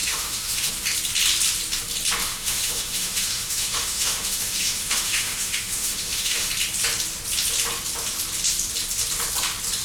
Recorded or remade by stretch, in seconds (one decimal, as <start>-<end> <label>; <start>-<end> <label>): 0.0-0.7 remade; 0.7-2.2 recorded; 2.2-6.5 remade; 6.5-9.8 recorded